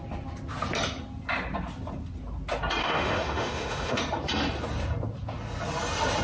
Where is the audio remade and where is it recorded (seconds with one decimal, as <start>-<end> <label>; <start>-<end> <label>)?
0.0-2.8 recorded; 2.8-4.0 remade; 4.0-6.2 recorded